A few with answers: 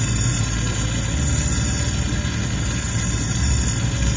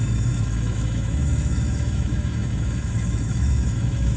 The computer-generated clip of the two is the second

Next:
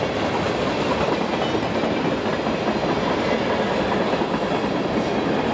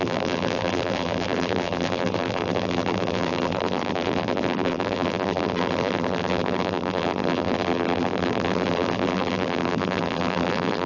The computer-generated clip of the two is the second